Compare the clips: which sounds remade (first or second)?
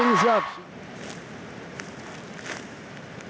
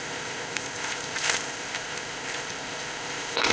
second